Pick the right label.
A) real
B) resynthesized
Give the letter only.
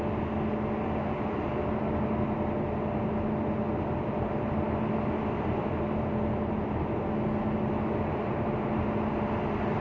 A